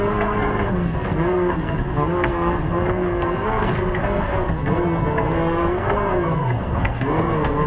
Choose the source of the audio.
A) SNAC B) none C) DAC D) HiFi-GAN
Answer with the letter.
A